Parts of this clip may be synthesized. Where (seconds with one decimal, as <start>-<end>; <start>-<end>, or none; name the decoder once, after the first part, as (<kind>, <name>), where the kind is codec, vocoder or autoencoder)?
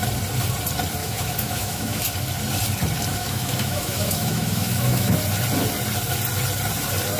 1.0-2.0 (autoencoder, DAC-VAE); 3.1-5.1